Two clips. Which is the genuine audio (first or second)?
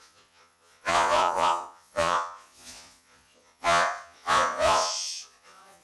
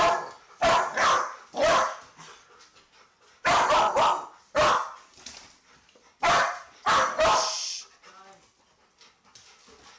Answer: second